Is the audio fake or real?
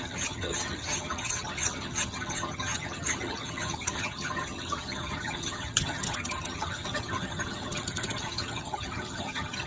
fake